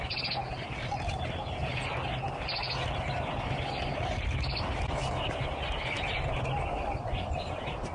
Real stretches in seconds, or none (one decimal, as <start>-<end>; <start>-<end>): 0.0-7.9